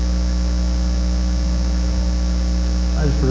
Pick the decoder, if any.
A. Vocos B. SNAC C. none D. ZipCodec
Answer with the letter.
C